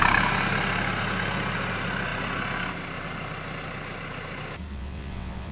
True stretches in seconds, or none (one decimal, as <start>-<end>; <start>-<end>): 0.0-4.7